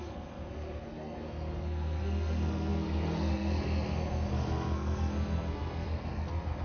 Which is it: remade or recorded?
remade